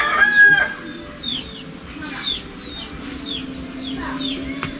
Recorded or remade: recorded